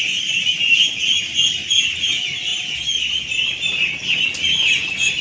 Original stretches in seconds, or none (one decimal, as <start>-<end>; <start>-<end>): 0.0-5.2